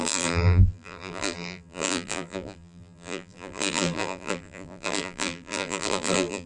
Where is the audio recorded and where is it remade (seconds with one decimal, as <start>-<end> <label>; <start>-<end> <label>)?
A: 0.0-6.5 remade